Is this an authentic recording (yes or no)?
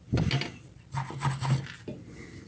yes